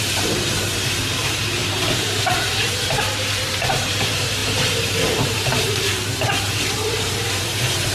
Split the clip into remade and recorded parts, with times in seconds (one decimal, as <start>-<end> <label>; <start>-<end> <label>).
0.0-7.9 remade